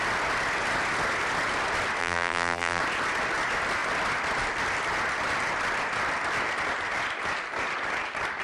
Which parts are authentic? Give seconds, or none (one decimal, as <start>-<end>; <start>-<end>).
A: 0.0-2.0; 2.8-8.4